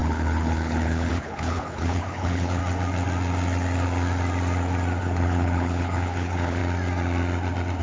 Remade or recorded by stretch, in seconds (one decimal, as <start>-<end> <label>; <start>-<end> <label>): 0.0-2.6 remade; 2.6-5.0 recorded; 5.0-6.6 remade; 6.6-7.8 recorded